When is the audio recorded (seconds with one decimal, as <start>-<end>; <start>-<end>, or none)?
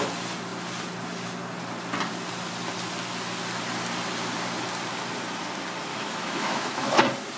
0.0-5.9; 7.0-7.4